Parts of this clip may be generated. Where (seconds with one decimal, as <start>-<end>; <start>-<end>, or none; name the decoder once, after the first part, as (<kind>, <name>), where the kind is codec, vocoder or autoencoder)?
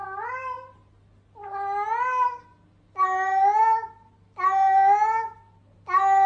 none